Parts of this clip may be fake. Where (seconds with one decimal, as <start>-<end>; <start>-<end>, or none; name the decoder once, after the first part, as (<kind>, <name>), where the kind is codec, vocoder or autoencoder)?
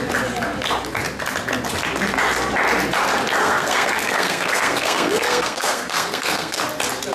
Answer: 3.4-6.6 (codec, SNAC)